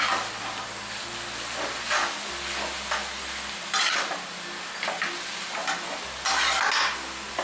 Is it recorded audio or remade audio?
recorded